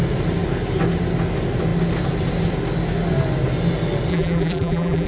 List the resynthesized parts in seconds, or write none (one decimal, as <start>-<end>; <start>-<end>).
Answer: 4.1-5.1